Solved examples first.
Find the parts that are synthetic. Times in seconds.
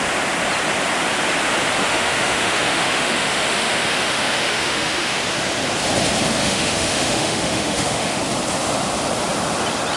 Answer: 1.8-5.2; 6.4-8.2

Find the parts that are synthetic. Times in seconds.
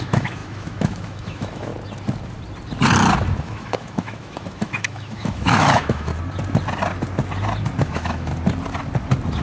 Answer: 0.0-1.7; 3.4-6.1; 7.8-8.3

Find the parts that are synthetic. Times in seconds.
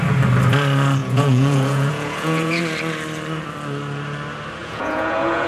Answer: 1.0-2.6; 4.6-5.5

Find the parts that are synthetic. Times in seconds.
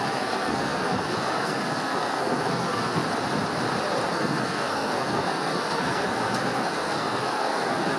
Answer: 0.0-3.0; 4.1-8.0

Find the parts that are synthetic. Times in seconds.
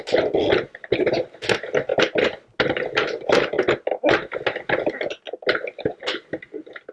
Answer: none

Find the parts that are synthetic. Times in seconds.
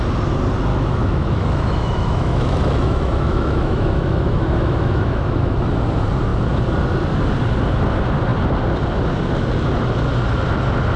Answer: 0.7-5.6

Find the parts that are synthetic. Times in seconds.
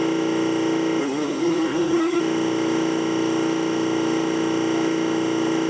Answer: 1.0-2.2